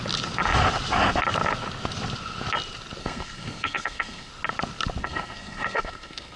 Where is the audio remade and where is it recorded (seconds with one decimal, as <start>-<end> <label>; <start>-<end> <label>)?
0.0-3.0 recorded; 3.0-4.3 remade; 4.3-5.0 recorded; 5.0-6.4 remade